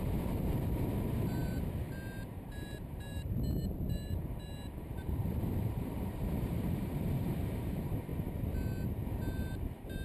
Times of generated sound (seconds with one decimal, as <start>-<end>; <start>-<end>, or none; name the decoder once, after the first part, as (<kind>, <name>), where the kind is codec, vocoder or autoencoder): 0.0-8.1 (vocoder, BigVGAN v2); 9.3-10.0